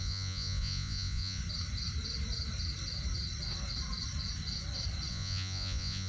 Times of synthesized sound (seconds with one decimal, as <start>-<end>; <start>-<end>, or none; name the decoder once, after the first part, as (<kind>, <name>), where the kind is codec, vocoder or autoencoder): 0.0-1.4 (vocoder, Vocos); 5.1-6.1